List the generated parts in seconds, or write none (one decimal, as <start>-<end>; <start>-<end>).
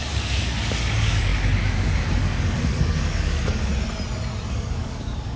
0.0-3.7; 4.5-5.4